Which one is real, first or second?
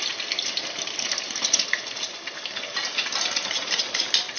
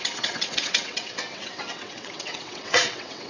first